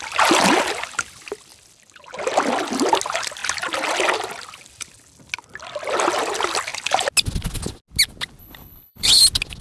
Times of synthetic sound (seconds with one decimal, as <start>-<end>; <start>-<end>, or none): 8.4-9.2